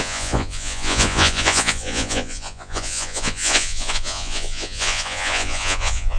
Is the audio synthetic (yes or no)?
yes